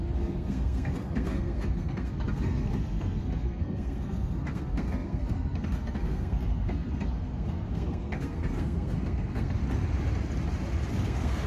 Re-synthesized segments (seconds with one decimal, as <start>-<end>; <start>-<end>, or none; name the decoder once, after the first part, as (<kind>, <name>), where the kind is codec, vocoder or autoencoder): 0.0-9.6 (codec, SNAC); 10.9-11.5

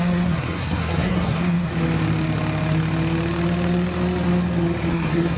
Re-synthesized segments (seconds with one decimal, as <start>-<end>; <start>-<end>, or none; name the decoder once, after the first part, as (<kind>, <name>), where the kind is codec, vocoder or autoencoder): 0.0-1.7 (codec, SNAC); 4.9-5.4

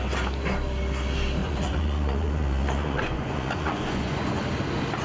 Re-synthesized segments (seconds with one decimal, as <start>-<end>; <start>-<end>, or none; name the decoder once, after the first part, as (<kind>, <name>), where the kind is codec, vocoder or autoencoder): 1.4-4.4 (vocoder, Vocos)

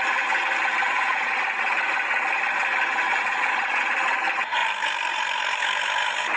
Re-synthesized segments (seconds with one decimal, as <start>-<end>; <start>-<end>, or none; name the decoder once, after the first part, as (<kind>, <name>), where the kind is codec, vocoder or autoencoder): 0.8-1.3 (vocoder, Vocos); 3.1-3.8

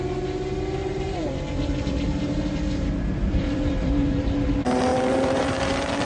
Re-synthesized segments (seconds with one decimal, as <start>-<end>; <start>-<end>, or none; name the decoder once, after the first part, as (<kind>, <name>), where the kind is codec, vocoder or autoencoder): 0.8-4.5 (vocoder, BigVGAN v2); 4.9-6.1

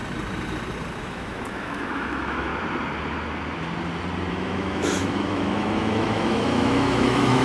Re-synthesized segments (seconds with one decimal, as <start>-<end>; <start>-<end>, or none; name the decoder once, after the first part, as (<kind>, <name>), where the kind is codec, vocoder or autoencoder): 1.0-2.5 (autoencoder, DAC-VAE); 4.3-7.4

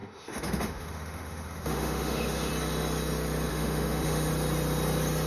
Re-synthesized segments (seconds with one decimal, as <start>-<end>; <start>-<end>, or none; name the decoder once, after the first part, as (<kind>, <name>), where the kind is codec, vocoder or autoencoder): 0.0-2.5 (autoencoder, DAC-VAE); 3.5-4.3